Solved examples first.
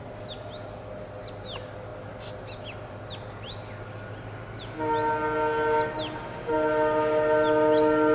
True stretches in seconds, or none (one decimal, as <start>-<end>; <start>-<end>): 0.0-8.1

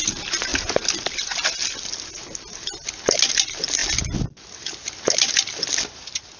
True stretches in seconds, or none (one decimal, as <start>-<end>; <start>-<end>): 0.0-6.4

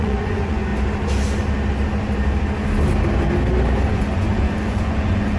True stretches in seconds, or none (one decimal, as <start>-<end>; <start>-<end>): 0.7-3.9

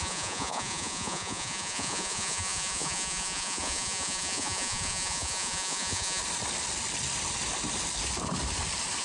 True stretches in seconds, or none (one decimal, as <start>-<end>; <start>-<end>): 6.2-9.0

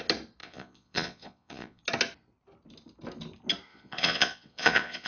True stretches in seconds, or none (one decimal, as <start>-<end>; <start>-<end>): 0.0-0.4; 1.8-3.7

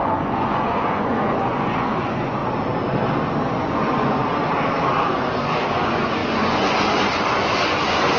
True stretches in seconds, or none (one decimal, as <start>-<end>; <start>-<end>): 2.4-3.5; 4.2-5.0

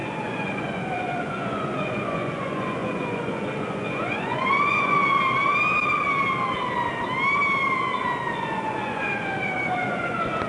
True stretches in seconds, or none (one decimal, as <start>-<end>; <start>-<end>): 5.0-8.3